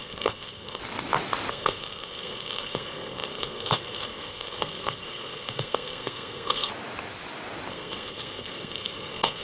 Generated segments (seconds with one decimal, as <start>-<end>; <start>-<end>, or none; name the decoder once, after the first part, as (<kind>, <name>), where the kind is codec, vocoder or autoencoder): 0.0-0.8 (codec, SNAC); 1.5-6.7; 7.7-9.4